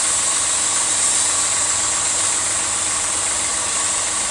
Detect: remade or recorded recorded